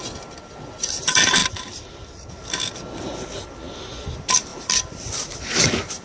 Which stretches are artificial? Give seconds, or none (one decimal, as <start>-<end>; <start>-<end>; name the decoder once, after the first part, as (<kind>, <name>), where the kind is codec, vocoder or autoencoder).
none